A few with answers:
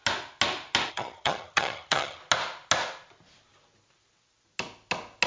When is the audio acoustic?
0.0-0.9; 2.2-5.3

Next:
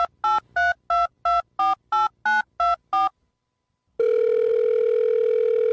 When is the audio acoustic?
0.0-5.7

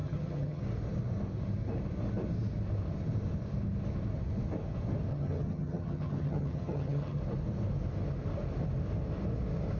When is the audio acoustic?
0.6-5.1; 7.2-9.8